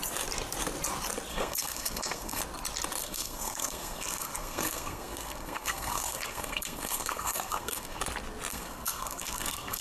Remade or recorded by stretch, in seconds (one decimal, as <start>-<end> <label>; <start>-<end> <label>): 0.0-1.3 recorded; 1.3-2.4 remade; 2.4-3.0 recorded; 3.0-8.0 remade; 8.0-8.5 recorded; 8.5-9.8 remade